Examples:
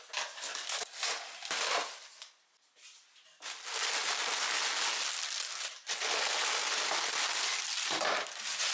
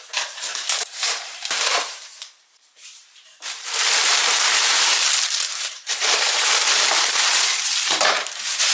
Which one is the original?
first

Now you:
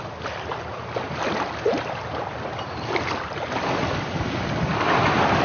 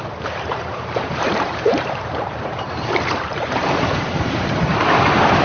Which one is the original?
first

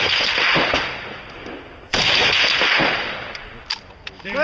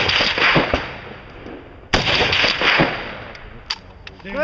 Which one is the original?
second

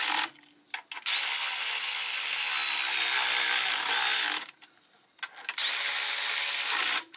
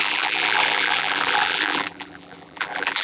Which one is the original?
first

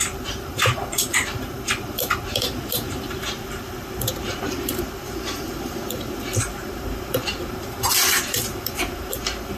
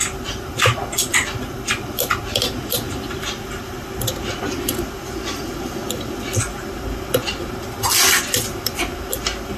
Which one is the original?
second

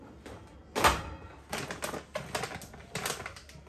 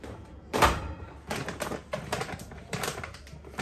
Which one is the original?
first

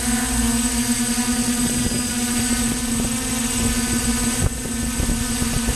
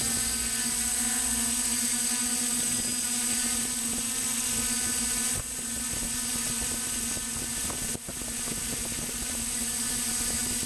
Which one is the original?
second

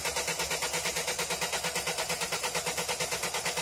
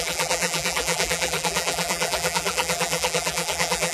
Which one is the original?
first